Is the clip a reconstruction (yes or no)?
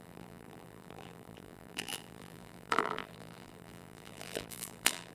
yes